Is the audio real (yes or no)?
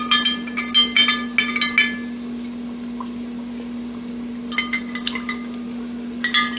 yes